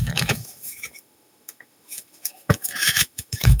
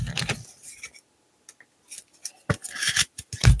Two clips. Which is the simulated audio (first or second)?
first